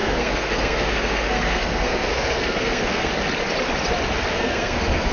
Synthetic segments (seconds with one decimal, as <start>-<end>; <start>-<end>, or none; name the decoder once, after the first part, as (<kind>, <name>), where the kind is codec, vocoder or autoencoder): 0.0-3.1 (codec, SNAC); 4.3-5.1